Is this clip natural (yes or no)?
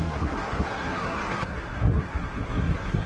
no